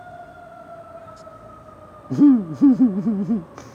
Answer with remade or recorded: recorded